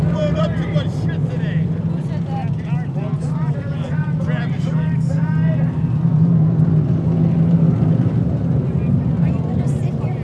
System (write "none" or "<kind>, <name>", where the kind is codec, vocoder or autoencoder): none